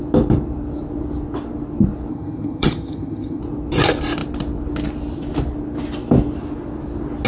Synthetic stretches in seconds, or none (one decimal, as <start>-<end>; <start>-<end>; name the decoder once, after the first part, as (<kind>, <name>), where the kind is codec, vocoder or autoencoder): 2.1-3.4 (vocoder, HiFi-GAN)